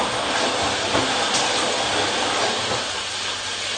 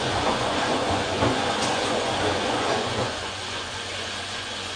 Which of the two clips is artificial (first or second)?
second